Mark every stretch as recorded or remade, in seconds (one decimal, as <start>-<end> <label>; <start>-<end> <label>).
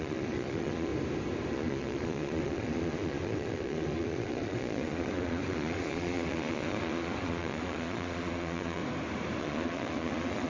0.0-0.9 remade; 0.9-1.5 recorded; 1.5-8.8 remade; 8.8-9.4 recorded; 9.4-10.5 remade